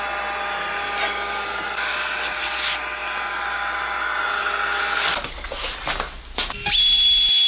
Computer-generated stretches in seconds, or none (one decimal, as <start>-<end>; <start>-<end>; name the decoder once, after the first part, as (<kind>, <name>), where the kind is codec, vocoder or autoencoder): none